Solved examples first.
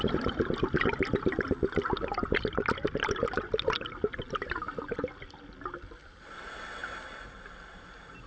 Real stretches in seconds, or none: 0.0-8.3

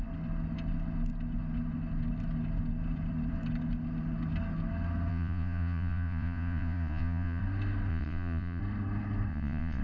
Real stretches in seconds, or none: 0.0-5.1; 7.4-7.9; 8.6-9.3

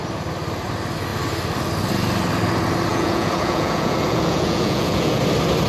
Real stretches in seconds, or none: 0.0-2.9; 5.2-5.7

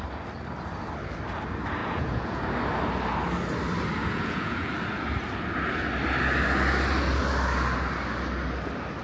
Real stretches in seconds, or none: 0.0-1.8; 2.4-4.0; 4.7-9.0

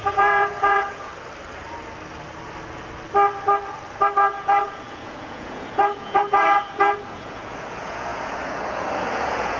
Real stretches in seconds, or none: 1.1-4.2

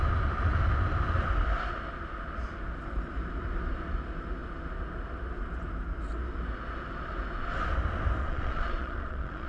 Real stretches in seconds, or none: 0.0-8.2

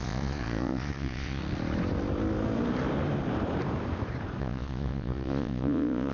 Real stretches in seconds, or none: 1.4-4.4

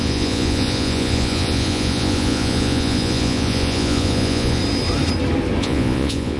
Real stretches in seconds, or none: 4.6-5.6